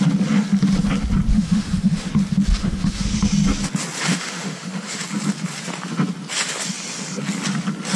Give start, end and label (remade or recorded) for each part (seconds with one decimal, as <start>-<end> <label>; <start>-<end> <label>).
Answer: 0.0-1.3 recorded; 1.3-2.1 remade; 2.1-2.6 recorded; 2.6-3.2 remade; 3.2-4.1 recorded; 4.1-5.0 remade; 5.0-8.0 recorded